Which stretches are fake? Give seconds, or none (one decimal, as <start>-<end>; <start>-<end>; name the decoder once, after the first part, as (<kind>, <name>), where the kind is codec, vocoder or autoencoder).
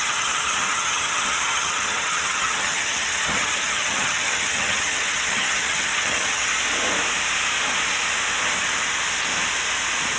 0.0-6.5 (vocoder, HiFi-GAN)